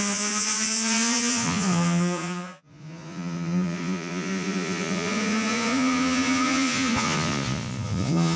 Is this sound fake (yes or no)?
yes